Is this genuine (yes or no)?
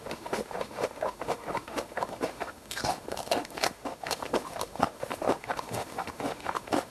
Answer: no